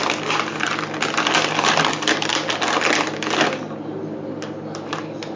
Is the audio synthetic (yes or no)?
no